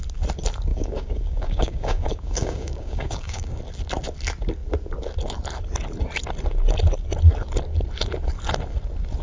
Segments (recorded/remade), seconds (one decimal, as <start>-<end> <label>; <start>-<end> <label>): 0.0-0.7 recorded; 0.7-3.6 remade; 3.6-9.2 recorded